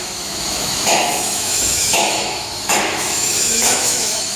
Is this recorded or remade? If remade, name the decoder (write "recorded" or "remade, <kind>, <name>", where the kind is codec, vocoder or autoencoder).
remade, autoencoder, DAC-VAE